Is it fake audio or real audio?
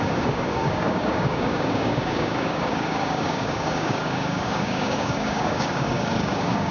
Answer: fake